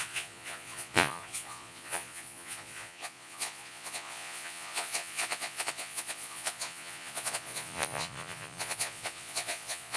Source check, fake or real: fake